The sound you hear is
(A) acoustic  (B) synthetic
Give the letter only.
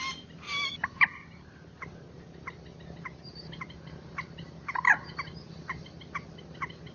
A